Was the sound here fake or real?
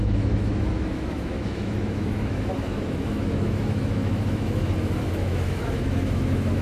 fake